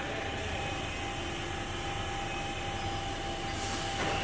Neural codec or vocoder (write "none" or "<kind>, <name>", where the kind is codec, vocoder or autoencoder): none